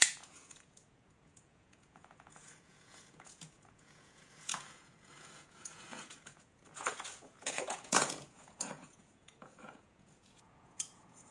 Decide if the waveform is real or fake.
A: fake